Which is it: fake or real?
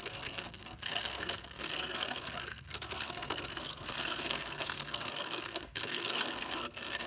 fake